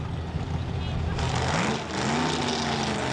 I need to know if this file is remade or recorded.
recorded